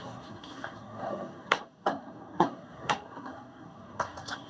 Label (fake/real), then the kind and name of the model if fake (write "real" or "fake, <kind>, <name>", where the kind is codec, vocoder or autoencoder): fake, codec, SNAC